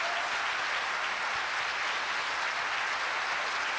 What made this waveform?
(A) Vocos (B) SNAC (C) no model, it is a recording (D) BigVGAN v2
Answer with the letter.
C